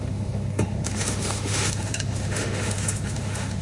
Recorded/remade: remade